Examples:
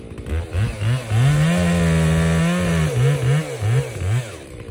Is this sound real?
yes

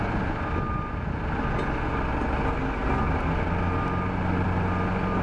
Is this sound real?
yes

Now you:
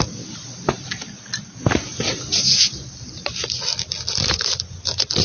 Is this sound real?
yes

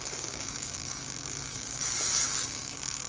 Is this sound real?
no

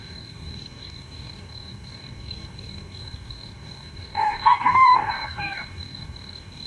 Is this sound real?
no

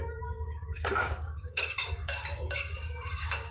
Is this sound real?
no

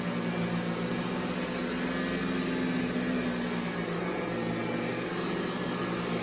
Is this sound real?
yes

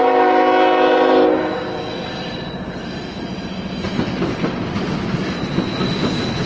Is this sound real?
yes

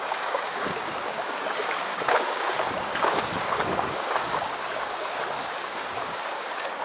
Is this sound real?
no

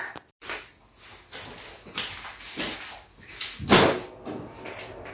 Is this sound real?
yes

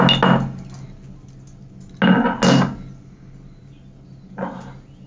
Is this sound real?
yes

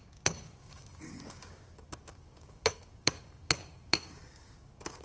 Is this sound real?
no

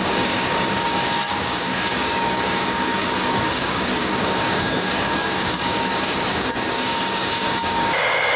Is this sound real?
no